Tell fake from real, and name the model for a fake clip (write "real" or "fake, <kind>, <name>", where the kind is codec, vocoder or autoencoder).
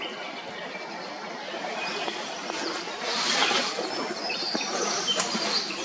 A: real